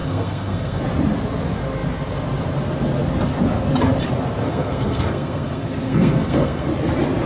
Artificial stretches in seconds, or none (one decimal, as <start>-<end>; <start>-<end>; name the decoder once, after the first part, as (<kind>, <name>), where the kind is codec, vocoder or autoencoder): 0.0-0.8 (codec, SNAC); 4.4-6.7